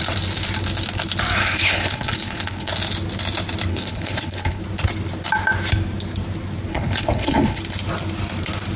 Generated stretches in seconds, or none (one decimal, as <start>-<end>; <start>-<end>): 1.4-2.7; 3.7-4.6; 6.7-7.6